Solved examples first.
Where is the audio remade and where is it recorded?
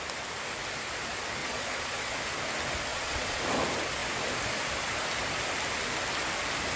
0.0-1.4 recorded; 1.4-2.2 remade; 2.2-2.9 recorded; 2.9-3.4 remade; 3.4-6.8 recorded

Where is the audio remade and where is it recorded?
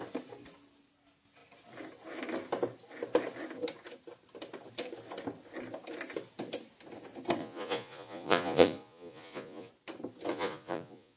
0.0-7.4 recorded; 7.4-9.7 remade; 9.7-10.3 recorded; 10.3-11.2 remade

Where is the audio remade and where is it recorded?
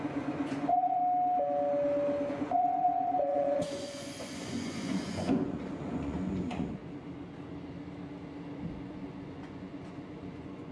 0.0-1.0 remade; 1.0-2.3 recorded; 2.3-6.8 remade; 6.8-8.7 recorded; 8.7-10.7 remade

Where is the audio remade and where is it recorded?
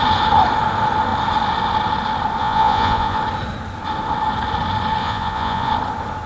0.0-2.4 recorded; 2.4-3.2 remade; 3.2-5.0 recorded; 5.0-5.7 remade; 5.7-6.3 recorded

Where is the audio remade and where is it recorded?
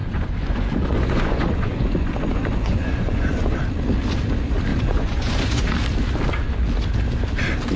0.0-3.6 remade; 3.6-4.7 recorded; 4.7-5.6 remade; 5.6-7.8 recorded